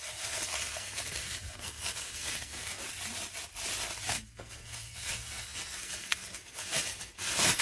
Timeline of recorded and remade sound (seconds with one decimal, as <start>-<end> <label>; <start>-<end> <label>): 0.0-2.8 remade; 2.8-4.1 recorded; 4.1-7.6 remade